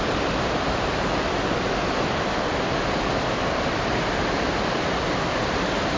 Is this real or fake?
real